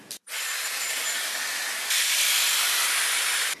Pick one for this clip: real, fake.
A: real